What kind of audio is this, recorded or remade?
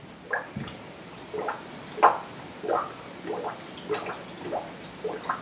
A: recorded